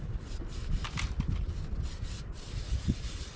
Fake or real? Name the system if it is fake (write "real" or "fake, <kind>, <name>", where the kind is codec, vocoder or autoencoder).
real